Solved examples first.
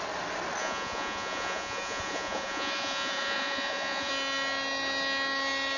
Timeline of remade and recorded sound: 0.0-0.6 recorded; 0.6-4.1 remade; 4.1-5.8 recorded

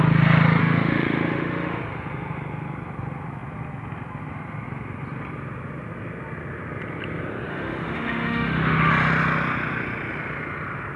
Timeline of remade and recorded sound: 0.0-0.6 recorded; 0.6-1.8 remade; 1.8-7.5 recorded; 7.5-8.9 remade; 8.9-11.0 recorded

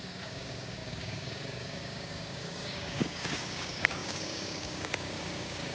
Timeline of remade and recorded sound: 0.0-5.7 remade

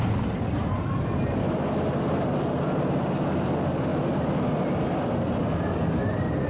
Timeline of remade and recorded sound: 0.0-6.5 recorded